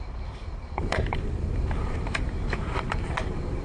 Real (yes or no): no